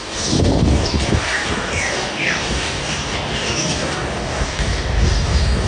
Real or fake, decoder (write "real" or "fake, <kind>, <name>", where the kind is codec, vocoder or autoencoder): fake, codec, DAC